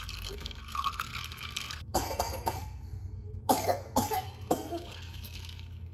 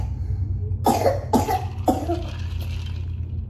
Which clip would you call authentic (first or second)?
second